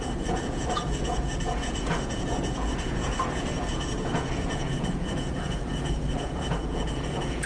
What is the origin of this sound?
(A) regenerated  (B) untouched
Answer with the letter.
A